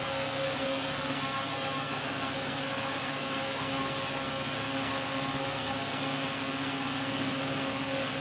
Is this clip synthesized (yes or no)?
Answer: yes